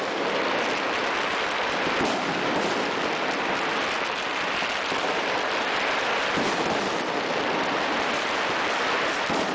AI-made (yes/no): no